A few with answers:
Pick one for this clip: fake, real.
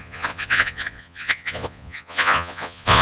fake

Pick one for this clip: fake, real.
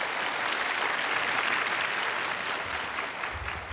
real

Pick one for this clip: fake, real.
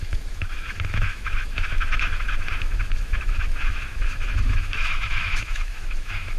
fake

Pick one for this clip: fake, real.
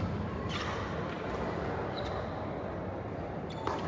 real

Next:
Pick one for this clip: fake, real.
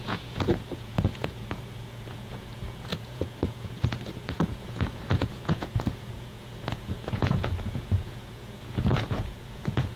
fake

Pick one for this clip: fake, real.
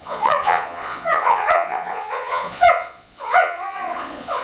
fake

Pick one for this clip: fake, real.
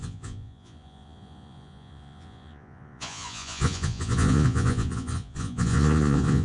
fake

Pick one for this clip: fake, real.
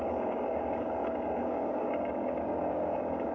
fake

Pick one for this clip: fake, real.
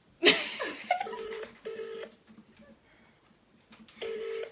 real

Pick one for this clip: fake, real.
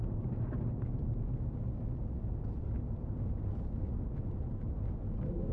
real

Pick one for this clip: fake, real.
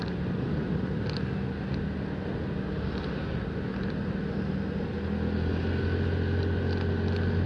real